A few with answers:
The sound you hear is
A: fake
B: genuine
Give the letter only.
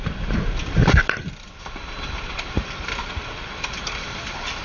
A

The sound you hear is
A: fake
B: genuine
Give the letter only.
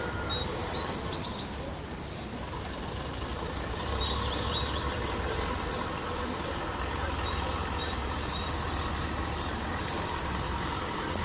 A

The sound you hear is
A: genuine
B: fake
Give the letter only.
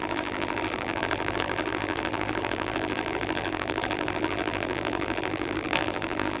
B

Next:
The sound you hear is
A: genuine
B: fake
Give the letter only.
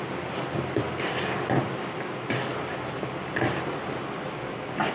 A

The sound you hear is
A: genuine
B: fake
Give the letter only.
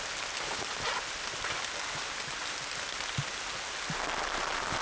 A